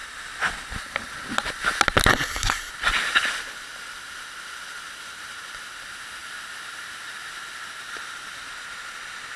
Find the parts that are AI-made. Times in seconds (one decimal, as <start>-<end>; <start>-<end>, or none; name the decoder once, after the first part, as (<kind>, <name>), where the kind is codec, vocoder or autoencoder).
2.1-2.7 (codec, SNAC)